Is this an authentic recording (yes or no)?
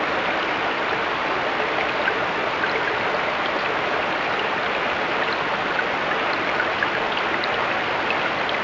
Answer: yes